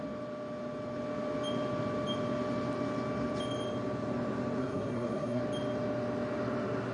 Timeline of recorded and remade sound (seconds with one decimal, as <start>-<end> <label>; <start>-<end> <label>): 0.0-4.6 recorded; 4.6-5.4 remade; 5.4-6.9 recorded